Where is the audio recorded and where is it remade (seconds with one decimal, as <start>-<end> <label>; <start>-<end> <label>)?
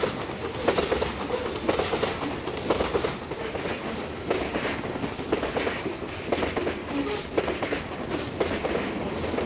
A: 0.0-9.5 recorded